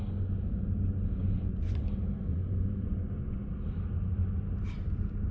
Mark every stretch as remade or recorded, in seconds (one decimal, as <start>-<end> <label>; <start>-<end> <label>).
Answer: 0.0-1.2 recorded; 1.2-1.9 remade; 1.9-2.3 recorded; 2.3-3.5 remade; 3.5-5.3 recorded